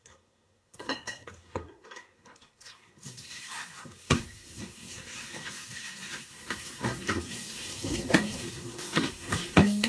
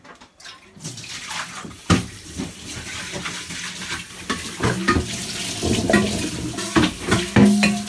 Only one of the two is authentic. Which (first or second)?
second